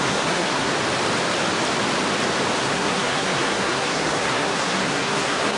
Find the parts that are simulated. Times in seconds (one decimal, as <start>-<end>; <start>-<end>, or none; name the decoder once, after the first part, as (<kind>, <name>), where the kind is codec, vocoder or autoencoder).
0.0-0.7 (codec, SNAC); 2.6-5.6